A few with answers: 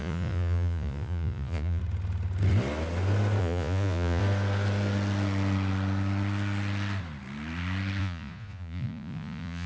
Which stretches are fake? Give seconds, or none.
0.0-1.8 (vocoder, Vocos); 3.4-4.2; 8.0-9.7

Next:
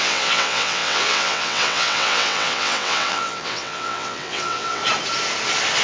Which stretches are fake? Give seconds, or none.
0.0-4.8 (vocoder, WaveNeXt)